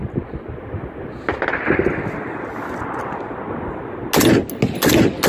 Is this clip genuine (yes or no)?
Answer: yes